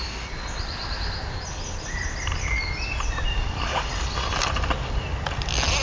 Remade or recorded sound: recorded